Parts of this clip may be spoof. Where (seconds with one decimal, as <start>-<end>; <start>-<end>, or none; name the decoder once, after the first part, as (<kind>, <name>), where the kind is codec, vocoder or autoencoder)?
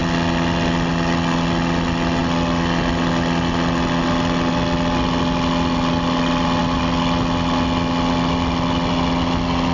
none